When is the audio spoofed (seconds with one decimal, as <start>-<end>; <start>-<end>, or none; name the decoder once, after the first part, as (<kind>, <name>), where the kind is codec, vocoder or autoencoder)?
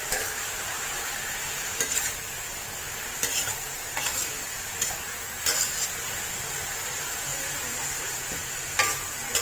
0.0-1.1 (vocoder, BigVGAN v2); 6.3-7.3; 8.0-8.4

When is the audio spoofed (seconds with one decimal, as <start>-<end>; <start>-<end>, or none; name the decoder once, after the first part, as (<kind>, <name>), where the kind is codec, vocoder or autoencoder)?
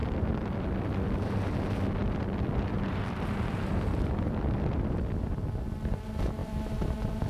0.0-0.5 (vocoder, BigVGAN v2); 2.0-5.3; 6.4-7.3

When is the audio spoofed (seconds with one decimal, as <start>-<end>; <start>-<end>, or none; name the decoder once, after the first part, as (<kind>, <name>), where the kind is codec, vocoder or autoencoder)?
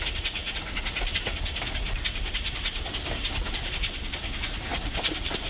none